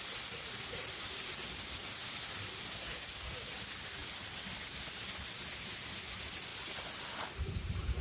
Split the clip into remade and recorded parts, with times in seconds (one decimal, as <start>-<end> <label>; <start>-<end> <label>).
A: 0.0-2.0 remade; 2.0-2.5 recorded; 2.5-8.0 remade